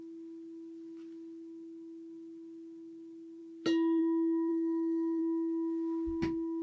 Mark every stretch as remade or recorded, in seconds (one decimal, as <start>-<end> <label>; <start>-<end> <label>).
0.0-4.5 recorded; 4.5-5.2 remade; 5.2-6.6 recorded